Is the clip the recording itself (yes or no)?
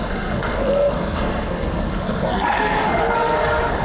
no